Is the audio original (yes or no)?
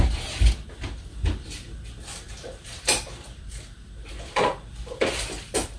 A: yes